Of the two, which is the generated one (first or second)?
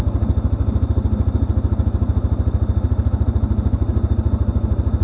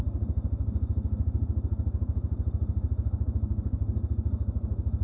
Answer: second